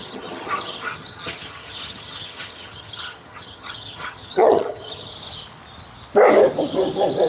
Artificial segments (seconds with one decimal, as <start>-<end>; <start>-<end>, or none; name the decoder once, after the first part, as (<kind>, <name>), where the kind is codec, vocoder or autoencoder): 0.0-5.1 (vocoder, HiFi-GAN)